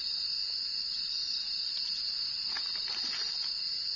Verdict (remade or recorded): recorded